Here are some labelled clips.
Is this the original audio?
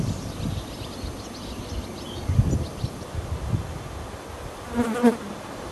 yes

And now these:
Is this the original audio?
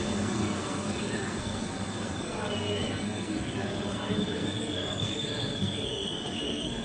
no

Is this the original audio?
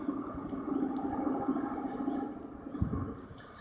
yes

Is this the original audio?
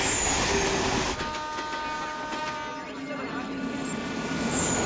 yes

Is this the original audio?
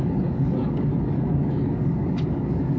no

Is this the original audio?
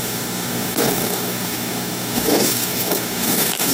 no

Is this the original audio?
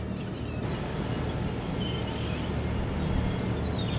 yes